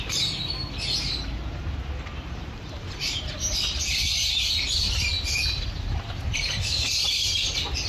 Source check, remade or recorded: remade